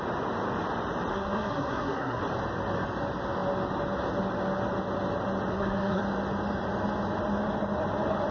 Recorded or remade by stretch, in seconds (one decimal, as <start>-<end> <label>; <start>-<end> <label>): 0.0-1.1 recorded; 1.1-2.2 remade; 2.2-5.5 recorded; 5.5-6.0 remade; 6.0-8.3 recorded